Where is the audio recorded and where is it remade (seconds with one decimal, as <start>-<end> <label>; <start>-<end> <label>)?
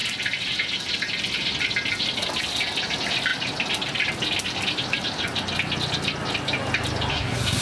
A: 0.0-7.1 recorded; 7.1-7.6 remade